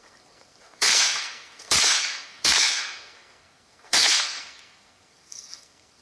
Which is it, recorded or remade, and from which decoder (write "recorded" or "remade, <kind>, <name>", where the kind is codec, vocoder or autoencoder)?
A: remade, codec, SNAC